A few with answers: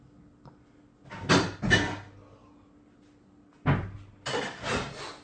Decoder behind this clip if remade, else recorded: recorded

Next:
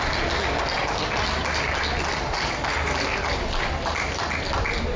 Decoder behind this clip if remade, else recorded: recorded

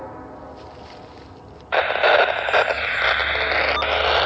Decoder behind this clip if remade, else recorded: recorded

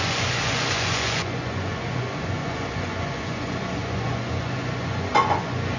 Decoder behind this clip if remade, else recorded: remade, vocoder, Vocos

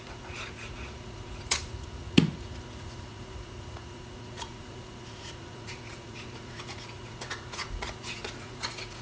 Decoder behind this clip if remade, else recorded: remade, vocoder, Vocos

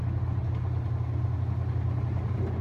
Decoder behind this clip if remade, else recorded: recorded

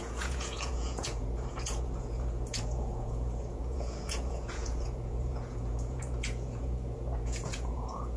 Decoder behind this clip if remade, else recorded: remade, vocoder, Vocos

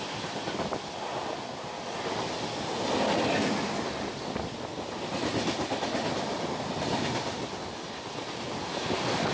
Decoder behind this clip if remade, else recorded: recorded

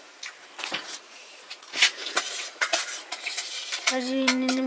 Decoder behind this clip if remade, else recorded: remade, vocoder, Vocos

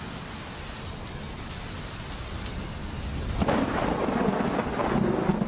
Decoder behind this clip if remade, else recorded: recorded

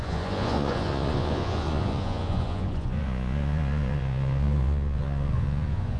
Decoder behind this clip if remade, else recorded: remade, vocoder, Vocos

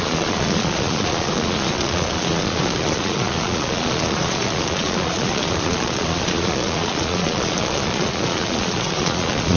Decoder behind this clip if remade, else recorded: remade, vocoder, Vocos